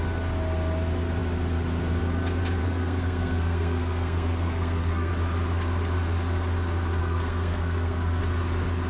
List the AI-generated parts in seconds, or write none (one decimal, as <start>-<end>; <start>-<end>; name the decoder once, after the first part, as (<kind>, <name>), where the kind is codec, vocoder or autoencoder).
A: 2.6-5.1 (codec, SNAC); 7.0-8.2